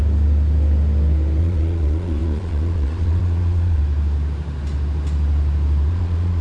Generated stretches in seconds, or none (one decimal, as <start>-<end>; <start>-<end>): 1.4-3.8; 5.9-6.4